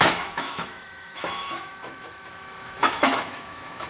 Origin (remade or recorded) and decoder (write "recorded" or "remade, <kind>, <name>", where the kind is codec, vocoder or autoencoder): remade, autoencoder, DAC-VAE